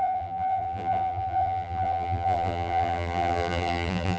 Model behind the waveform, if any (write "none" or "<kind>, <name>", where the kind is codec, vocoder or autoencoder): vocoder, BigVGAN v2